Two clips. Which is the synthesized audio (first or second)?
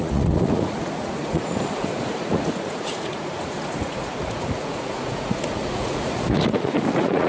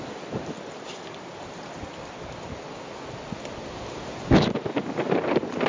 first